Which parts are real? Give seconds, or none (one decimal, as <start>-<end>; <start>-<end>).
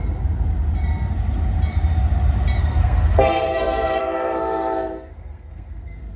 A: 0.0-2.6